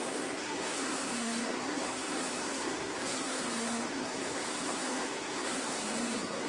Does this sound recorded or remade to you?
remade